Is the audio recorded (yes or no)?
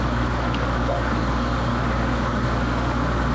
no